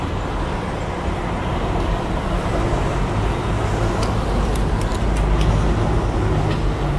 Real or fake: real